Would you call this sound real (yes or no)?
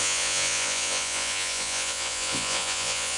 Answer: no